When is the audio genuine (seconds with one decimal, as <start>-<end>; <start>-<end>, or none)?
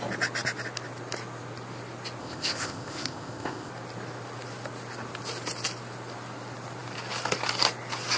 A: 0.0-2.2; 3.7-8.2